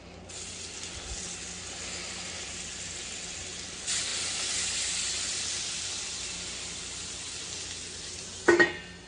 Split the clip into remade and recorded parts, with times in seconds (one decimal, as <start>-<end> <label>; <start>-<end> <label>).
0.0-9.1 recorded